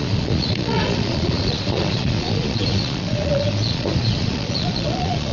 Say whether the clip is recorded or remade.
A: remade